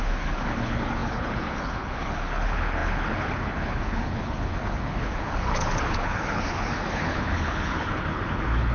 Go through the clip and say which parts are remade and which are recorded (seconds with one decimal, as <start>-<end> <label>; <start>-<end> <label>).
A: 0.0-8.7 remade